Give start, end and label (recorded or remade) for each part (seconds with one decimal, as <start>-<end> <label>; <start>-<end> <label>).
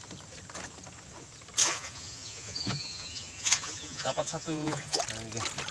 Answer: 0.0-1.6 recorded; 1.6-5.0 remade; 5.0-5.7 recorded